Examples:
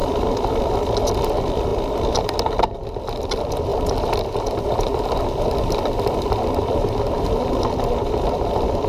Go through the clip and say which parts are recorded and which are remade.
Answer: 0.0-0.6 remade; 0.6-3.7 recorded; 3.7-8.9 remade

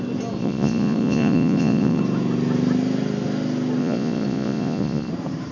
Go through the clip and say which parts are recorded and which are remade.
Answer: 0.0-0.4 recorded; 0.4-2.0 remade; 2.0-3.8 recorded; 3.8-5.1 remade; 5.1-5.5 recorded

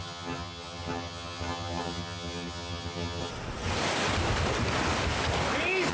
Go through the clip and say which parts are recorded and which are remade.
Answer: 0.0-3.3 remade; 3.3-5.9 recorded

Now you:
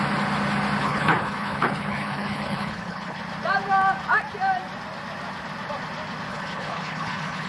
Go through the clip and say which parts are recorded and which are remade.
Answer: 0.0-0.8 recorded; 0.8-3.2 remade; 3.2-6.3 recorded; 6.3-7.5 remade

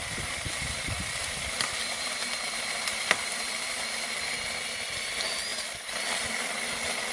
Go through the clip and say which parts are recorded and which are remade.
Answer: 0.0-4.3 remade; 4.3-5.5 recorded; 5.5-6.4 remade; 6.4-7.1 recorded

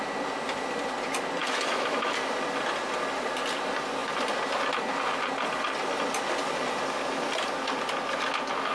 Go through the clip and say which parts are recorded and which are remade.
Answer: 0.0-1.4 recorded; 1.4-2.1 remade; 2.1-8.7 recorded